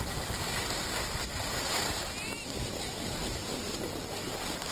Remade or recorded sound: recorded